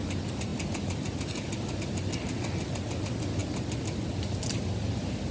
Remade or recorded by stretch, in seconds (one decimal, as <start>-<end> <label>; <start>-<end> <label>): 0.0-5.3 recorded

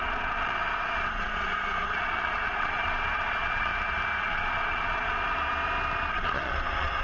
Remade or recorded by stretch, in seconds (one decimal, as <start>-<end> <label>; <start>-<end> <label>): 0.0-3.7 remade; 3.7-4.2 recorded; 4.2-5.2 remade; 5.2-6.1 recorded; 6.1-7.0 remade